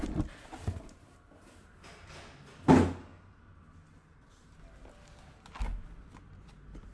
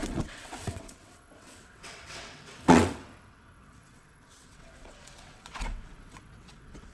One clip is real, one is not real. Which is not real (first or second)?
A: second